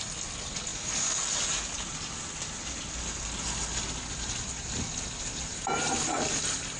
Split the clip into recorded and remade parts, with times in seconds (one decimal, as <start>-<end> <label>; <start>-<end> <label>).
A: 0.0-6.8 recorded